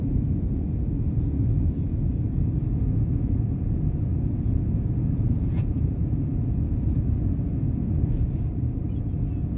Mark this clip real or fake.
fake